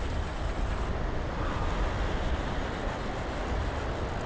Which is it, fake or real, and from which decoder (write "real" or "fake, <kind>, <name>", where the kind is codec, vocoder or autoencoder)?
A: real